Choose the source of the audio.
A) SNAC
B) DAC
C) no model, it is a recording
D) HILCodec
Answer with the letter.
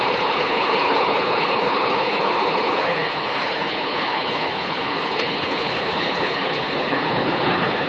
D